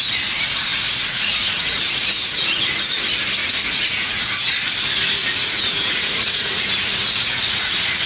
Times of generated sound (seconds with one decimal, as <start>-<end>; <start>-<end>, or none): 0.7-3.0; 3.4-4.3; 5.2-8.1